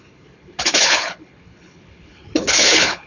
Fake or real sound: fake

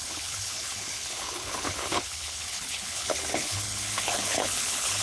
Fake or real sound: fake